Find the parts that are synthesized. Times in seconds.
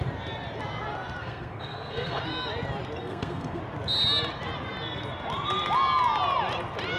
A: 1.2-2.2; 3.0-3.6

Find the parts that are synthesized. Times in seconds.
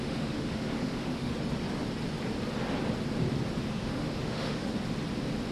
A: 0.0-1.3; 3.7-4.7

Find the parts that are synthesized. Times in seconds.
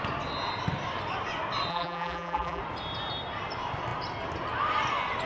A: 1.7-2.6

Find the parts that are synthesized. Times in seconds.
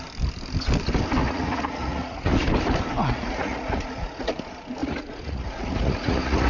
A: 1.2-2.3; 3.0-4.3; 4.8-6.5